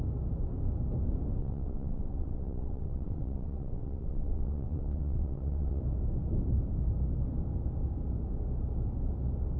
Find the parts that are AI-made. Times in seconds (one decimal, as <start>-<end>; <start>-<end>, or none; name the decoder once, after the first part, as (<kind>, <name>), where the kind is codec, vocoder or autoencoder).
1.4-5.8 (vocoder, WaveNeXt)